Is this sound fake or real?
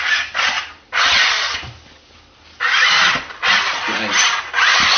real